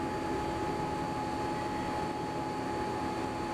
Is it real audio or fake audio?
real